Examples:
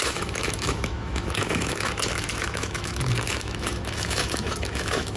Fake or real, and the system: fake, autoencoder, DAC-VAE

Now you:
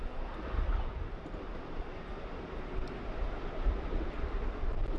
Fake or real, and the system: real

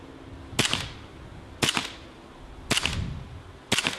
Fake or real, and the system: real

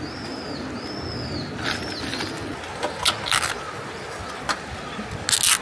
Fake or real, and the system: real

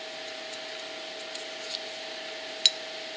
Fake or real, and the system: real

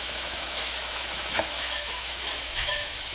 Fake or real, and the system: fake, autoencoder, DAC-VAE